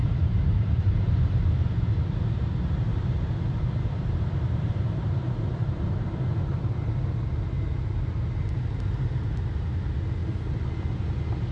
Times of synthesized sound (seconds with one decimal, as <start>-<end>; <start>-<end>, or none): 0.0-1.2; 2.9-6.2